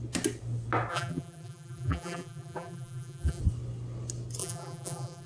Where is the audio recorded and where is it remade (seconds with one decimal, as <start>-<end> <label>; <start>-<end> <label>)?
0.0-0.9 recorded; 0.9-3.4 remade; 3.4-4.4 recorded; 4.4-5.3 remade